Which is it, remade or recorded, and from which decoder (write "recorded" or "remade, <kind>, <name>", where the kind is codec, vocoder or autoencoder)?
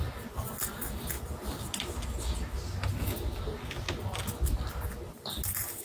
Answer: recorded